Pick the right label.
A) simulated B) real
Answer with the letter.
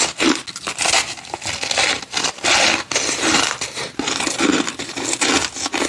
B